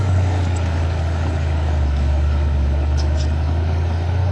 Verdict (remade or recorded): remade